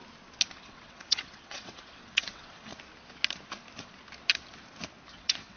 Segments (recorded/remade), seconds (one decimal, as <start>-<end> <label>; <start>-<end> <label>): 0.0-0.6 recorded; 0.6-2.7 remade; 2.7-5.1 recorded; 5.1-5.6 remade